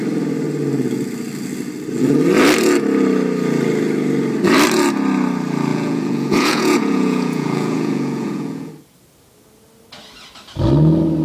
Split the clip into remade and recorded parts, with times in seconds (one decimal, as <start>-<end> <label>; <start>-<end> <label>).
0.0-5.7 recorded; 5.7-8.7 remade; 8.7-11.2 recorded